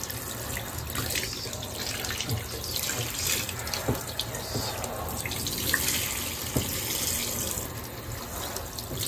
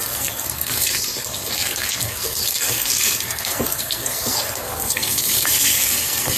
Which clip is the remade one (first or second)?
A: second